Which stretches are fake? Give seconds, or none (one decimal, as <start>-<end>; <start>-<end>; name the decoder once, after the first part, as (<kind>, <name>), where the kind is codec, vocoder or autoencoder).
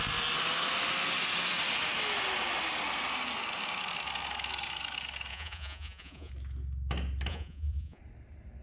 5.3-6.3 (vocoder, Vocos); 7.3-8.0